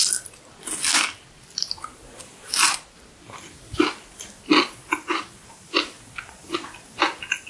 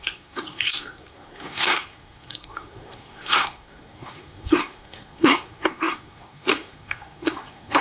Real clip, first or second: first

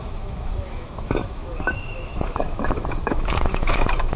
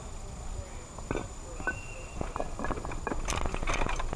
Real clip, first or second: second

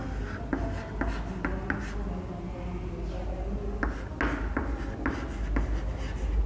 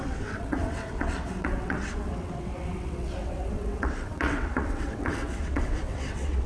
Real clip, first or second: first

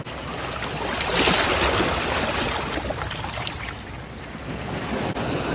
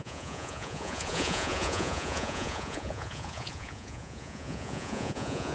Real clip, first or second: first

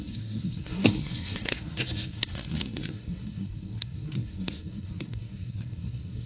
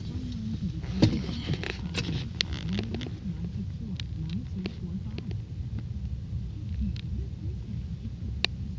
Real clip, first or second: second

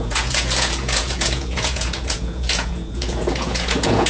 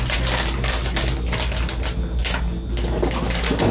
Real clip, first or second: second